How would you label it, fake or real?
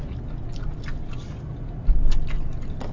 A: real